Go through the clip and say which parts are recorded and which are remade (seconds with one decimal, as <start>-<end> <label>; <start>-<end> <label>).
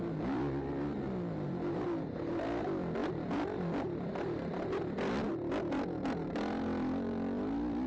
0.0-7.9 recorded